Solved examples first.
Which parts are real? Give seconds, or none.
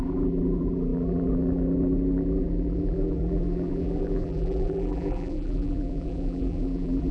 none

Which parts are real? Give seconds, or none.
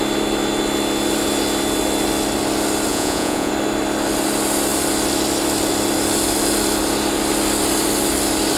0.0-2.9; 3.5-8.6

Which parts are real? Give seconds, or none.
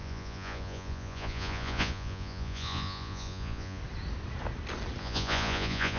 3.8-5.0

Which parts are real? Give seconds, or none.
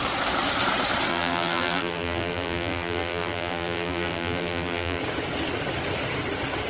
0.0-1.1; 5.0-6.7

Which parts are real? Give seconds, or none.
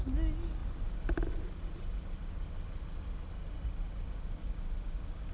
0.0-0.6; 1.1-5.3